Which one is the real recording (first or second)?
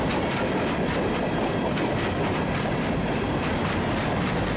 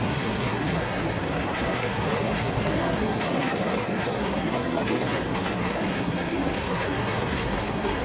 first